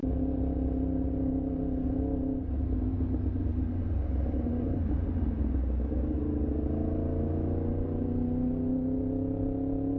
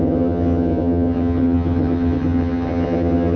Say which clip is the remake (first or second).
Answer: second